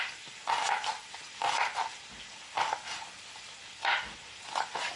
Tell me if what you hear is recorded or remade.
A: remade